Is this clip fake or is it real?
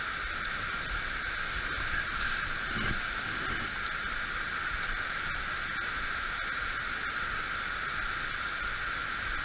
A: real